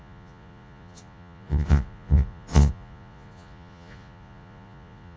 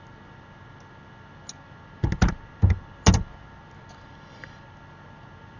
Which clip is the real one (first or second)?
second